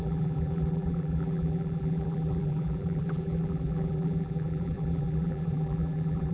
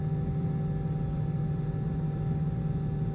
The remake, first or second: first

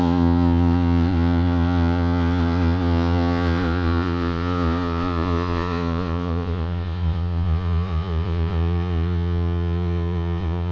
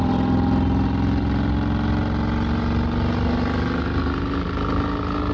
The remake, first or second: first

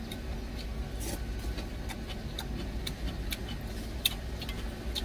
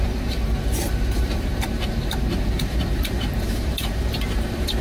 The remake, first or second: second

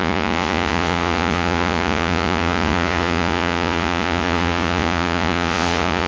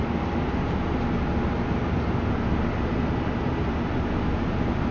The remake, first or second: first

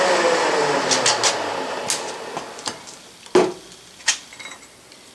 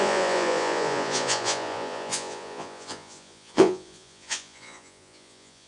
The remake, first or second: second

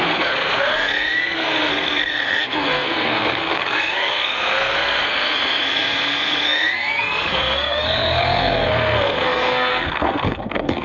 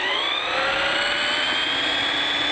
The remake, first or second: first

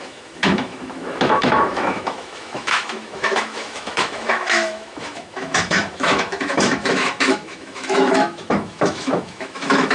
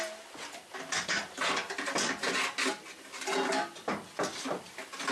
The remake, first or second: first